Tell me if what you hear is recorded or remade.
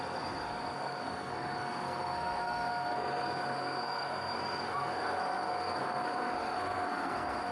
remade